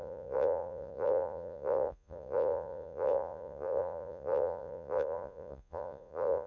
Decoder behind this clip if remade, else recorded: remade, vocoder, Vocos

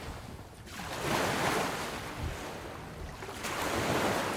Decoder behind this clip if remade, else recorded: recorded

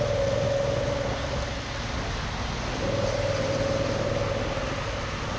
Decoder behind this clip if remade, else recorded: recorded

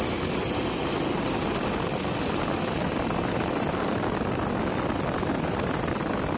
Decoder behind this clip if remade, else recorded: recorded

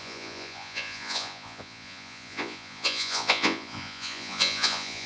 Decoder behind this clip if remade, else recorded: remade, vocoder, Vocos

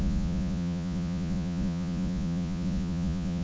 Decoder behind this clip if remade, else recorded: remade, vocoder, Vocos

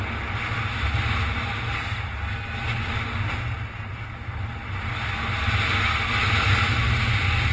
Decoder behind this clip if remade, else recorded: recorded